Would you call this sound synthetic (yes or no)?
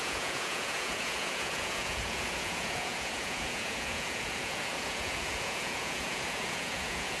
yes